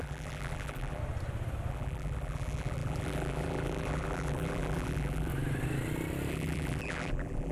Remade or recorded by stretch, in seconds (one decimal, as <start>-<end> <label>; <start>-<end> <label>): 0.0-1.0 remade; 1.0-1.7 recorded; 1.7-5.3 remade; 5.3-6.3 recorded; 6.3-7.5 remade